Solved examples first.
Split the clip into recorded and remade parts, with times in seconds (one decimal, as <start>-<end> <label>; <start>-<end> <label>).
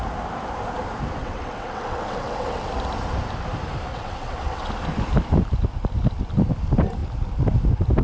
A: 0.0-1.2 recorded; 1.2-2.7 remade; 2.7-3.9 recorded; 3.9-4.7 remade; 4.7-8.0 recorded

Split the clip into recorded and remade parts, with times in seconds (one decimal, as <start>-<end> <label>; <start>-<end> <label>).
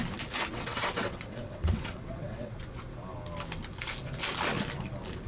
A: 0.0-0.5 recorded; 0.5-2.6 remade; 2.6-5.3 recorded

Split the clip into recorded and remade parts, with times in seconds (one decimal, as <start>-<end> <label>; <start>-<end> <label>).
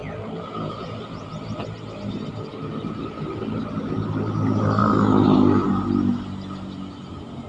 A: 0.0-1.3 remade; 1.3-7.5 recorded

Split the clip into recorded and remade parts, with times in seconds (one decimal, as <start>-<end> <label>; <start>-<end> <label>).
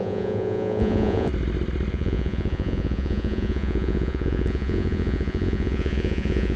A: 0.0-1.3 remade; 1.3-1.9 recorded; 1.9-6.6 remade